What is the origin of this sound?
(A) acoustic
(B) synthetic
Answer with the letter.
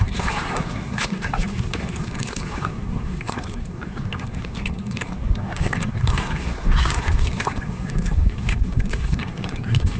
B